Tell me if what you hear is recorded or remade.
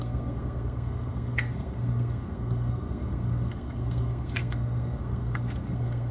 remade